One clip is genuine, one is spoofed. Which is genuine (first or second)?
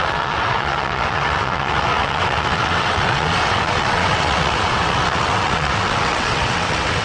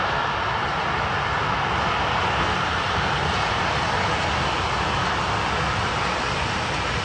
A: second